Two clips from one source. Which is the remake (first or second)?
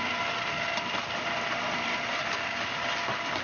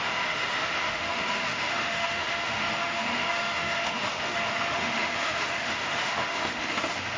second